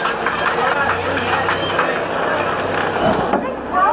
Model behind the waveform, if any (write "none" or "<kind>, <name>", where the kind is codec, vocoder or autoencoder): none